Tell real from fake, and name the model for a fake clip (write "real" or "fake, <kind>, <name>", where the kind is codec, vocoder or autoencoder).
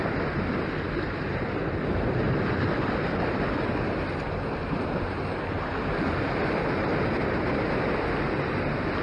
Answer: real